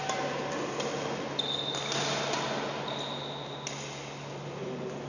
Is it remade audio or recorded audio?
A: recorded